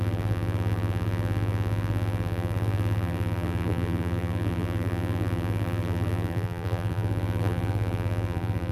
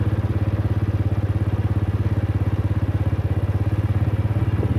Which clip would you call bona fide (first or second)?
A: second